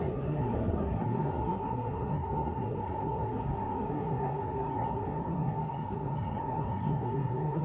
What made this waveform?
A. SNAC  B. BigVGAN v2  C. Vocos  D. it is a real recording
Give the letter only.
A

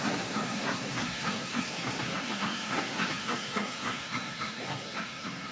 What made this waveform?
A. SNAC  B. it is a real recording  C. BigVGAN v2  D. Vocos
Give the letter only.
A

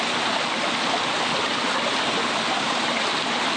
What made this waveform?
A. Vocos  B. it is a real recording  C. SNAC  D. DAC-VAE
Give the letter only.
B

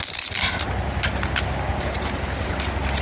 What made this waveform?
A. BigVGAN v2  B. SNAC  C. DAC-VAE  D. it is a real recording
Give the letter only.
D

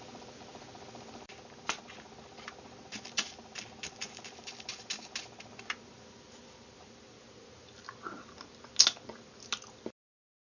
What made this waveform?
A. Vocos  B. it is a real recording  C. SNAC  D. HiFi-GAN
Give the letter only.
B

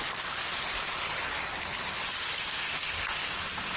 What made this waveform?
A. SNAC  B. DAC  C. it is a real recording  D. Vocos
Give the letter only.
C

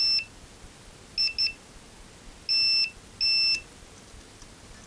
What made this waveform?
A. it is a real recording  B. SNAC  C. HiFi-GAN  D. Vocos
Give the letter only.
A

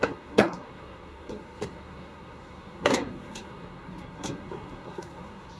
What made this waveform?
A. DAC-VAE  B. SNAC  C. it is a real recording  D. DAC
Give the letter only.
B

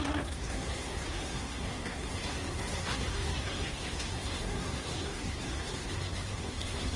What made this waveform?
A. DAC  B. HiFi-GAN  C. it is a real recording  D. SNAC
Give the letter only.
D